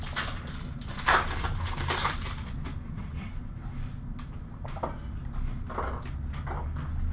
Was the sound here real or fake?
real